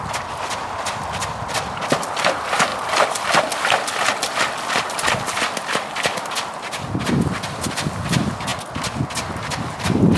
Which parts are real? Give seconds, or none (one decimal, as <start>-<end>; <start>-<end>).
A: 0.0-10.2

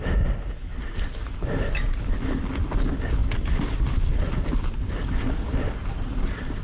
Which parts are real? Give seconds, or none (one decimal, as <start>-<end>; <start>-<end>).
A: 0.0-6.6

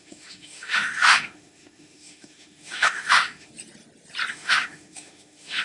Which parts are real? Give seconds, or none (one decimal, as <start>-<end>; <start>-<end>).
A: 3.5-4.3

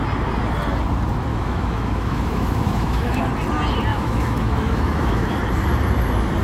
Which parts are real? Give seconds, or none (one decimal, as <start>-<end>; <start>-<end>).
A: 0.0-1.3; 3.2-3.9; 5.4-6.4

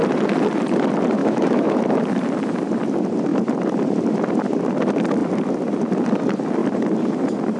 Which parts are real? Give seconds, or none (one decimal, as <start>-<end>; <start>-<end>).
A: 0.0-1.2; 1.8-7.6

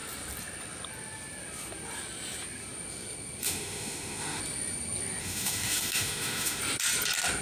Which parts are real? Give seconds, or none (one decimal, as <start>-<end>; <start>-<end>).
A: 0.0-3.4; 4.4-5.2; 6.6-7.4